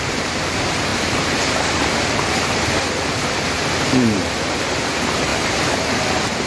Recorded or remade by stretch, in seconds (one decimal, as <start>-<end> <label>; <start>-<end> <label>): 0.0-6.5 remade